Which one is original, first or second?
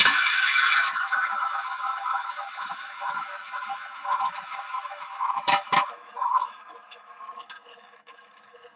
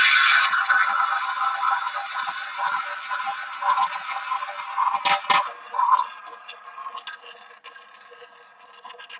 second